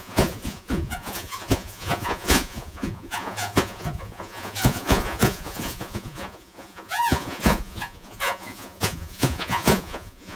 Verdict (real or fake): fake